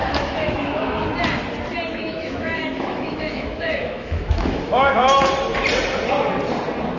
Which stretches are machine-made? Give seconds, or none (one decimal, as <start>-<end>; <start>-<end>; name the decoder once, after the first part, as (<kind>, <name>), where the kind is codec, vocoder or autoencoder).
0.0-1.1 (autoencoder, DAC-VAE); 1.9-5.3